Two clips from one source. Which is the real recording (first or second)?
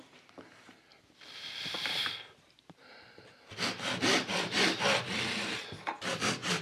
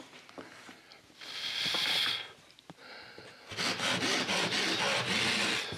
second